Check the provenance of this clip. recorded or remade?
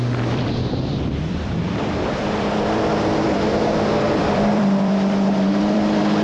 remade